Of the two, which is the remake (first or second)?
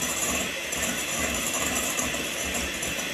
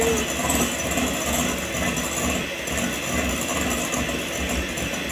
first